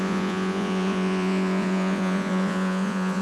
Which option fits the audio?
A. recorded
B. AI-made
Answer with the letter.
B